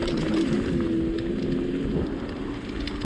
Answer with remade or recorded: recorded